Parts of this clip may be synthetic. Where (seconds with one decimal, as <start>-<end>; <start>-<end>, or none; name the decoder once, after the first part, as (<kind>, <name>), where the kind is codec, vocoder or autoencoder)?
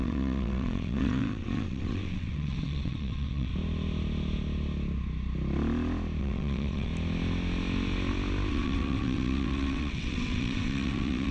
0.0-3.5 (vocoder, WaveNeXt); 6.2-6.9; 8.5-11.3